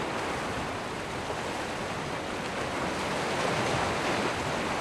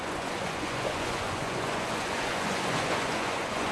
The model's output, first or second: second